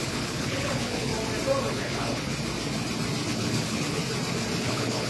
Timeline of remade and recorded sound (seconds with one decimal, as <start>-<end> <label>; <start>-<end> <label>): 0.0-1.1 remade; 1.1-1.7 recorded; 1.7-2.3 remade; 2.3-3.3 recorded; 3.3-4.0 remade; 4.0-4.6 recorded; 4.6-5.1 remade